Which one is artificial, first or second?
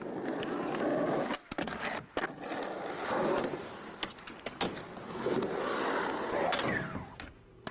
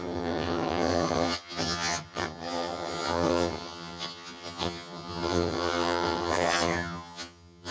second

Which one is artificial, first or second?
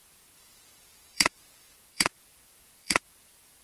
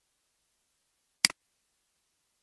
first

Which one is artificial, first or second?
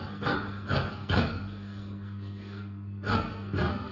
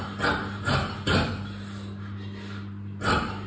first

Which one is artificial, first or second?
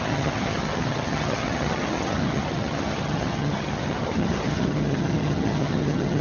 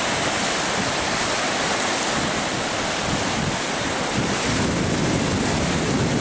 first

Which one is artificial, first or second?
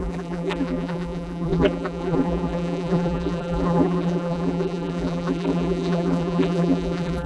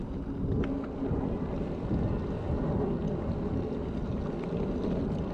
first